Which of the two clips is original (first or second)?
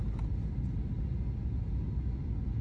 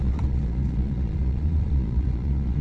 first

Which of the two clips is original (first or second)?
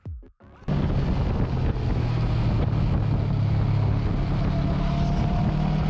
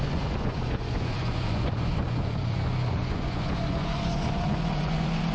first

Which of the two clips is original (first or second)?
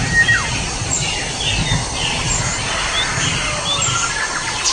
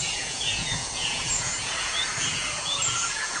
first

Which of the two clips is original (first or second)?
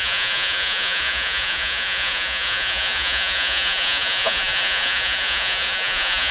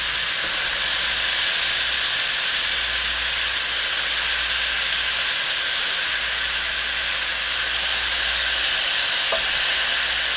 second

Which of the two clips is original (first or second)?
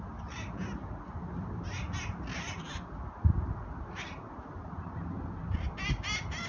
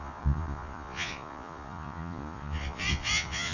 first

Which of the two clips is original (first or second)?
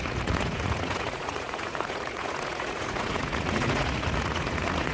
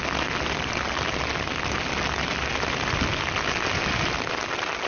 second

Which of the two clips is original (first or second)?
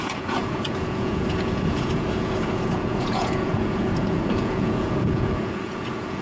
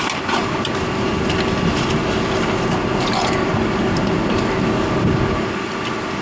second